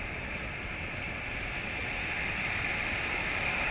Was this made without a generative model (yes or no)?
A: yes